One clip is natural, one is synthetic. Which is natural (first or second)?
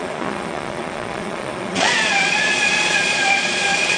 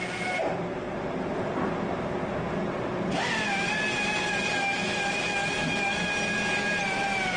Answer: second